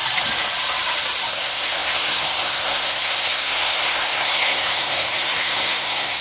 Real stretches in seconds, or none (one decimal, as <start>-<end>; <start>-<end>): 0.0-1.3